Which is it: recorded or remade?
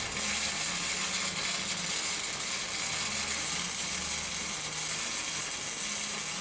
recorded